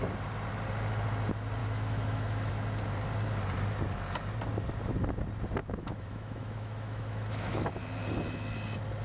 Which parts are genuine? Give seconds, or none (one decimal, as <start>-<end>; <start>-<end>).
0.0-1.6; 2.5-5.6; 7.7-9.0